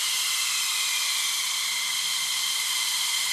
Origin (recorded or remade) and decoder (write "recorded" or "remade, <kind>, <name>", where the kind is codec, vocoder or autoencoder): recorded